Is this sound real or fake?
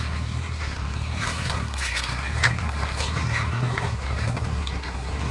fake